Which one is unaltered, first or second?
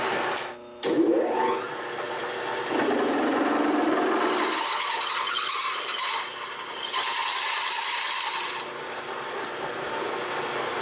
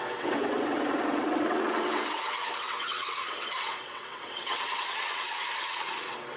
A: first